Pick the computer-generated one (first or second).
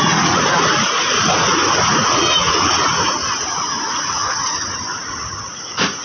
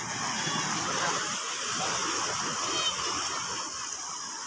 first